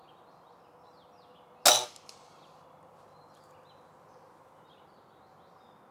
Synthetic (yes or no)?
no